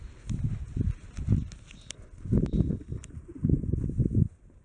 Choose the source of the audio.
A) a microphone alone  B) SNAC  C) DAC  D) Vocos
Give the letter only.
A